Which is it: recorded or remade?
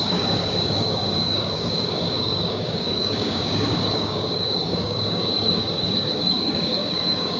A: remade